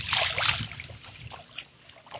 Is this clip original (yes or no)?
yes